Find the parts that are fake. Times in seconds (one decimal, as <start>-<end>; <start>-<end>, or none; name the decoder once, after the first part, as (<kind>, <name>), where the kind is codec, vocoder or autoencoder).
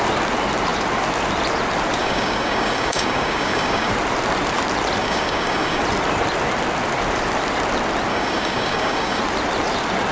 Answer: 2.0-3.9 (codec, DAC); 5.0-5.8; 8.1-9.2